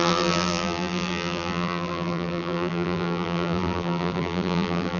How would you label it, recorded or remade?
remade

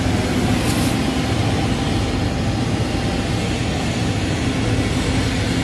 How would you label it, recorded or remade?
recorded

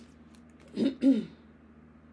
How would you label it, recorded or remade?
recorded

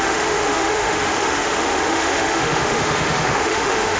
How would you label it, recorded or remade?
remade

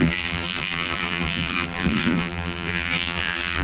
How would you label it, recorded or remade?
remade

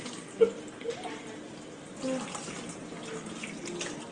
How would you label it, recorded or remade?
recorded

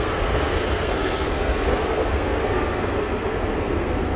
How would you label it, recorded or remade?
remade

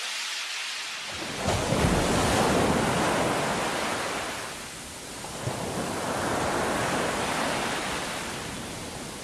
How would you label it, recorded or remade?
recorded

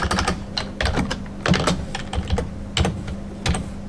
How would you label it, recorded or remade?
recorded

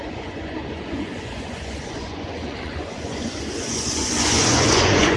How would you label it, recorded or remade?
remade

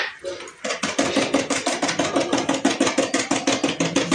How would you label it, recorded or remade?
recorded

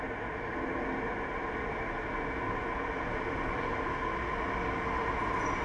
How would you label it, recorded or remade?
recorded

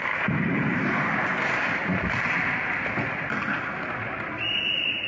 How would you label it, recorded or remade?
recorded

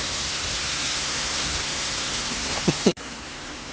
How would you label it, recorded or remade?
remade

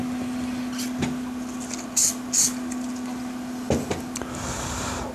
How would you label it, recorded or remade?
recorded